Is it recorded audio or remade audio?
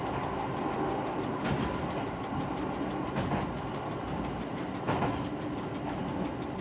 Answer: recorded